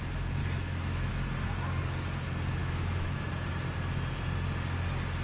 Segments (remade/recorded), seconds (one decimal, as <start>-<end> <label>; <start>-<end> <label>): 0.0-0.4 recorded; 0.4-1.1 remade; 1.1-2.6 recorded; 2.6-3.5 remade; 3.5-5.2 recorded